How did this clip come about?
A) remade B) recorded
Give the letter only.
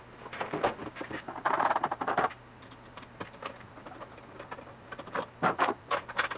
A